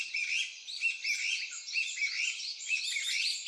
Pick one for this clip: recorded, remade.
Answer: recorded